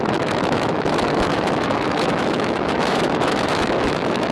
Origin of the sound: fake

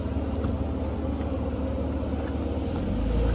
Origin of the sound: real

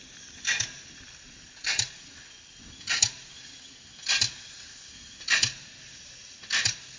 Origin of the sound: real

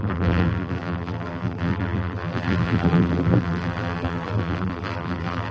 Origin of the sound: fake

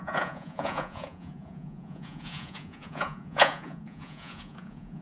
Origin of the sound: fake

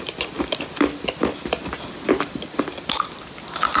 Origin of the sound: real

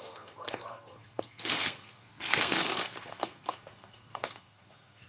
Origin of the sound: fake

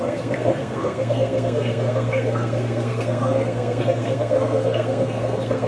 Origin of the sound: fake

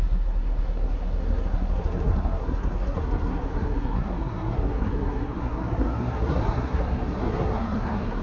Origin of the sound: fake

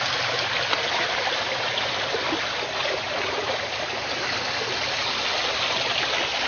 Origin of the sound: real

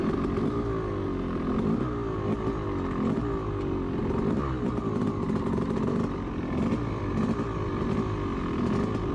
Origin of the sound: real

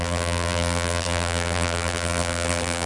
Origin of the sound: fake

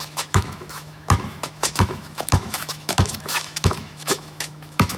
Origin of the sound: fake